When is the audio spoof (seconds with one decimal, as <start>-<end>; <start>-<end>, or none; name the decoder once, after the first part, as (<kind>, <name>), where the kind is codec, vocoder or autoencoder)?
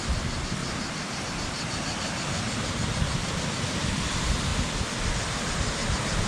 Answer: 0.6-1.3 (vocoder, BigVGAN v2); 3.2-3.9